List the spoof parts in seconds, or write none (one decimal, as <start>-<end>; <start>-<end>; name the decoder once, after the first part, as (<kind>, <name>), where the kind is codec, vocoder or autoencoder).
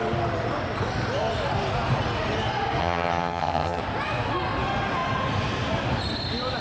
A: 2.8-3.8 (vocoder, HiFi-GAN)